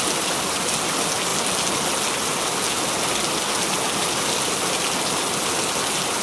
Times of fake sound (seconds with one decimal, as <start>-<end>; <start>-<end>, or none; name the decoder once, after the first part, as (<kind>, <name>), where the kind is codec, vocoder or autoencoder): none